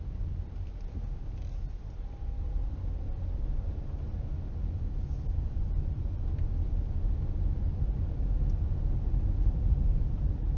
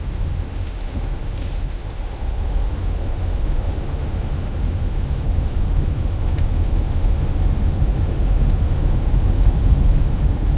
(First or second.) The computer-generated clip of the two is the second